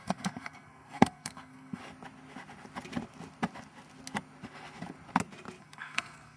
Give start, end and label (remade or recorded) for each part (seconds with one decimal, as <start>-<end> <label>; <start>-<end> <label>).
0.0-1.8 remade; 1.8-5.6 recorded; 5.6-6.4 remade